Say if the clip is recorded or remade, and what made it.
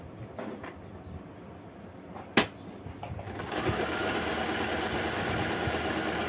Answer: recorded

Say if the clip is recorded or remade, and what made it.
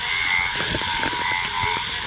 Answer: recorded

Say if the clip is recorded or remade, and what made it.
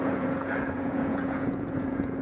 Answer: remade, vocoder, Vocos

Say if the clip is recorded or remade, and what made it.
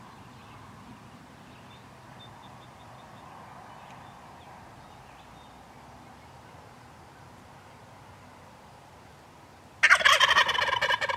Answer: recorded